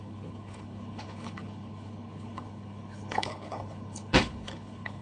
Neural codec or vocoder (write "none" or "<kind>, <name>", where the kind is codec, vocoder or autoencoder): codec, HILCodec